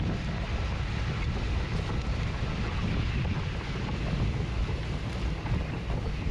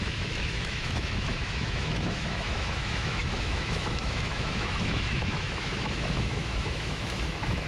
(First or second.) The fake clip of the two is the second